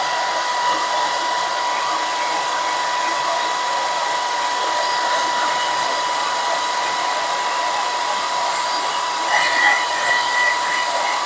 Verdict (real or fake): fake